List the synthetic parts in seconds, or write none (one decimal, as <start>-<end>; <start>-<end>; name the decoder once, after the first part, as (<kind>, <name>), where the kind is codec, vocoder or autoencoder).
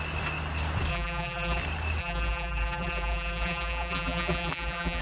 0.9-1.6 (vocoder, BigVGAN v2); 2.0-5.0